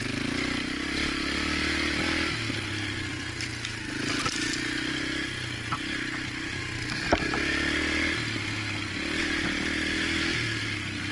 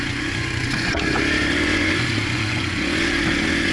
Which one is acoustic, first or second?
first